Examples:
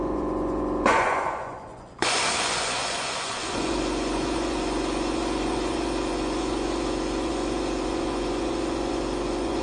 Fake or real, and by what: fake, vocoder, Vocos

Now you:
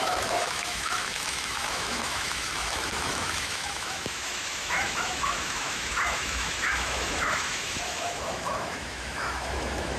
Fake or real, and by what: fake, autoencoder, DAC-VAE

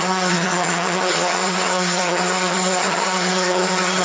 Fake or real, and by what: fake, vocoder, HiFi-GAN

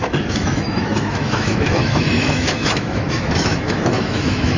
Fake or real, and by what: fake, autoencoder, DAC-VAE